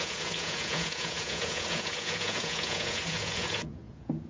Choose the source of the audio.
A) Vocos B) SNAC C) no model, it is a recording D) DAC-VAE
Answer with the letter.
A